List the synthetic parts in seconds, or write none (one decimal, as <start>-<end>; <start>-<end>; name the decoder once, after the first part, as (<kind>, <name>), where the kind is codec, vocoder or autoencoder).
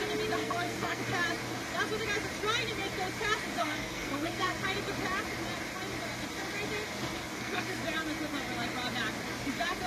0.4-1.0 (codec, SNAC); 3.6-4.6; 7.3-7.8